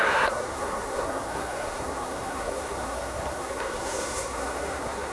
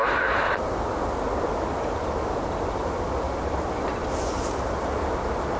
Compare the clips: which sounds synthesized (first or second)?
first